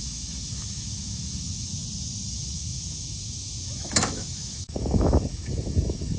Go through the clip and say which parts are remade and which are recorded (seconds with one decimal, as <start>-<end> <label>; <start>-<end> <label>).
0.0-1.7 remade; 1.7-2.3 recorded; 2.3-6.2 remade